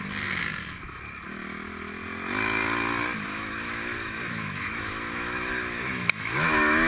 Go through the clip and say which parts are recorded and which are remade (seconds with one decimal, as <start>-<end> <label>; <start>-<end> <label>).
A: 0.0-3.3 recorded; 3.3-6.9 remade